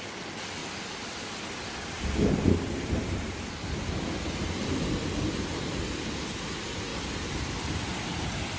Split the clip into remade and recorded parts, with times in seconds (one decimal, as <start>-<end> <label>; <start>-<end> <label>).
0.0-8.6 recorded